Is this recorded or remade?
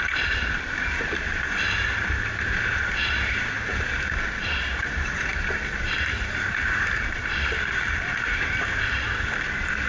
remade